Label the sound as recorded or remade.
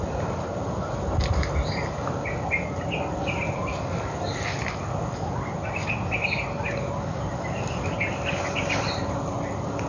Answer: recorded